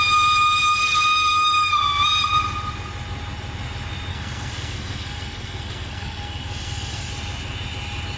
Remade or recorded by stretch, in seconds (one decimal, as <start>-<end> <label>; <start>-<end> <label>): 0.0-0.8 recorded; 0.8-1.8 remade; 1.8-4.1 recorded; 4.1-7.1 remade; 7.1-8.2 recorded